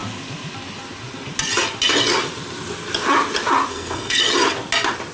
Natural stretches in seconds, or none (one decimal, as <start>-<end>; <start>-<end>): 0.0-3.7; 4.2-5.1